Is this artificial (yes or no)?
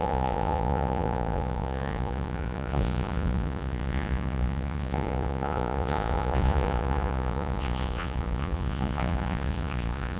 yes